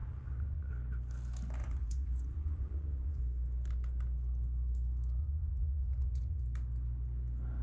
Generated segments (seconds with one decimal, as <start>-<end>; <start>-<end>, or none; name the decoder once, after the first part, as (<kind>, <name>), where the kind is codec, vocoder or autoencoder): 0.0-0.7 (vocoder, Vocos); 1.6-3.2; 5.2-6.4